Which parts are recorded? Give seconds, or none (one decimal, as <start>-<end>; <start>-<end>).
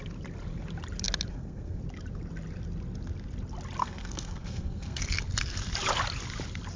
0.0-1.3; 1.8-3.8; 5.0-6.8